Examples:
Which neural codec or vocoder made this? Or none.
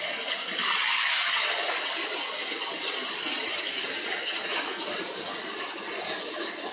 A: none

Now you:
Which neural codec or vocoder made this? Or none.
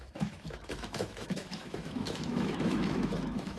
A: autoencoder, DAC-VAE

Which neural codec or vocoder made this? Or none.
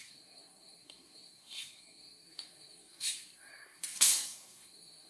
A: codec, SNAC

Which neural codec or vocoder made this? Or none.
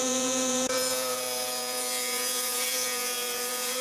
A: vocoder, Vocos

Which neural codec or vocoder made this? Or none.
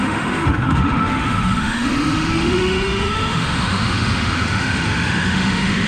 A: autoencoder, DAC-VAE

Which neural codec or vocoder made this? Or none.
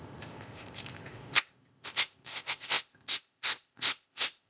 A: codec, ZipCodec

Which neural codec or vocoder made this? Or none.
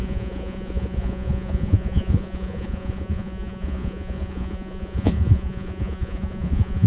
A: vocoder, Vocos